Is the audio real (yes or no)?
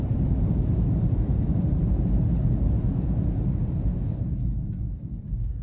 yes